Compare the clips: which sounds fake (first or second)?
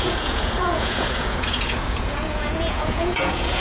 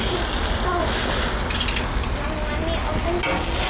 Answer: first